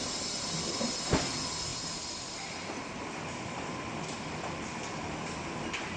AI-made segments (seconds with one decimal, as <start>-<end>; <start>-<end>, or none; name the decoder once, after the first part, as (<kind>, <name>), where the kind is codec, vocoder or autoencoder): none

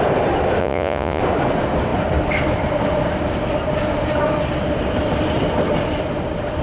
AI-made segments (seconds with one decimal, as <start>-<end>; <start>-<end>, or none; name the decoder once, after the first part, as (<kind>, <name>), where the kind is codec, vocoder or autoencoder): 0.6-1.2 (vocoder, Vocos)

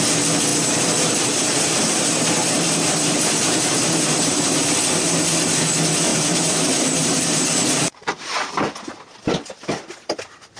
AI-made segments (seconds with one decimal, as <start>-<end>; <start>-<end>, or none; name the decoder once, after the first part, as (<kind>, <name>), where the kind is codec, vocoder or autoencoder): 0.5-4.7 (vocoder, BigVGAN v2); 6.1-8.9